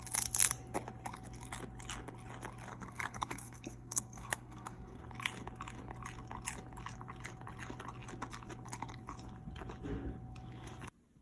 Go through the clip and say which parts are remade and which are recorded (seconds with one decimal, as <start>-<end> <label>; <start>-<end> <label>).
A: 0.0-2.7 recorded; 2.7-5.0 remade; 5.0-11.2 recorded